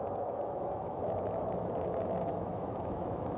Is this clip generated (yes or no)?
yes